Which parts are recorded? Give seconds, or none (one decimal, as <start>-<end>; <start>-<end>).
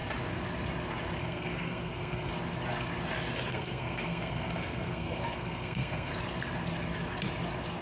0.0-1.2; 2.3-3.5; 6.1-7.8